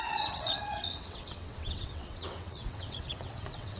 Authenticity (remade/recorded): remade